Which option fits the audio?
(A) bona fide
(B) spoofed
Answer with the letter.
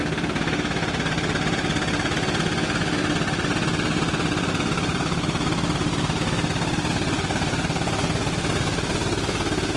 A